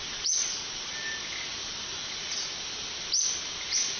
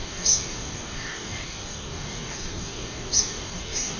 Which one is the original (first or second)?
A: first